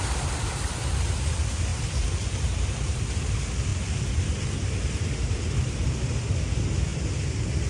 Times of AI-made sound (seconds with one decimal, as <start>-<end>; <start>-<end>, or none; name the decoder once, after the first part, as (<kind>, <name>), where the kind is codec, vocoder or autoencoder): 1.7-3.0 (vocoder, BigVGAN v2)